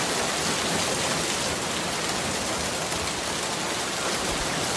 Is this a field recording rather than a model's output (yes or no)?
yes